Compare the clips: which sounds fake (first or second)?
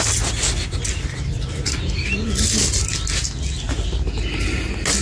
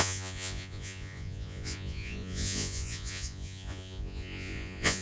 second